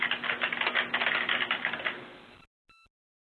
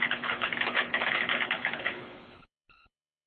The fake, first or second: second